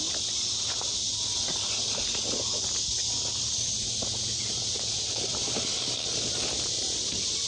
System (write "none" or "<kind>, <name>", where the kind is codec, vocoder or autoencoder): none